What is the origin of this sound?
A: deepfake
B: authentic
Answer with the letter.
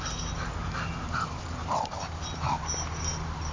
B